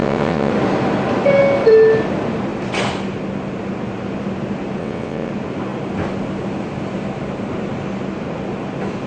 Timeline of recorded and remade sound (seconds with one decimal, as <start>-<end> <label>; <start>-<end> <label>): 0.0-0.5 remade; 0.5-4.8 recorded; 4.8-5.3 remade; 5.3-9.1 recorded